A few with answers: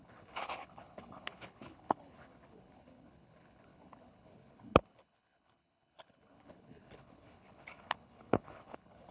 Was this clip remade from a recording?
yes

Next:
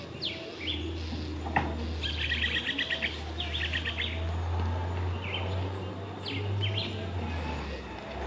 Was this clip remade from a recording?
no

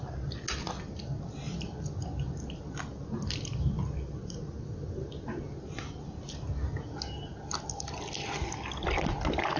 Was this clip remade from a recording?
no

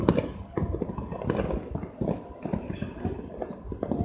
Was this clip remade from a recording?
no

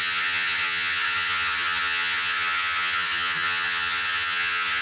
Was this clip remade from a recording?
yes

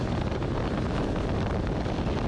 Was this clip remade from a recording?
no